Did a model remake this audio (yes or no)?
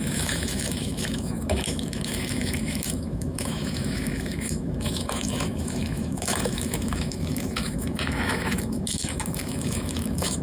yes